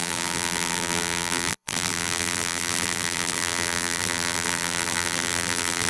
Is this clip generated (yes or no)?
yes